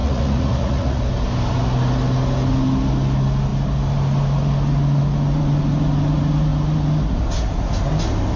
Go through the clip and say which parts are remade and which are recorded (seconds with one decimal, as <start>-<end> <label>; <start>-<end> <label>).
0.0-1.0 remade; 1.0-8.4 recorded